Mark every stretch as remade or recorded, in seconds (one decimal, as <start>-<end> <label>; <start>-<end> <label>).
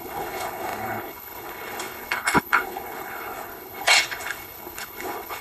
0.0-5.4 remade